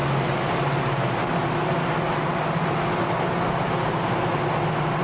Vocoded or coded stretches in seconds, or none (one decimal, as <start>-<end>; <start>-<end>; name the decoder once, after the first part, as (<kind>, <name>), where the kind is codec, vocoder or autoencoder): none